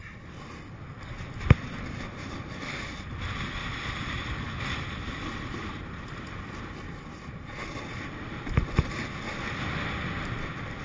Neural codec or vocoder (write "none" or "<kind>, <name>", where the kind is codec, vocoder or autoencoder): none